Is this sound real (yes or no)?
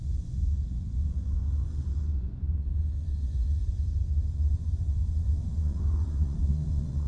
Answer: no